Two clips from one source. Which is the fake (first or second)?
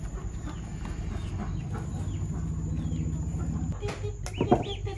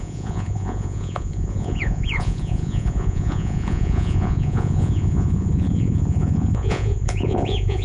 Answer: second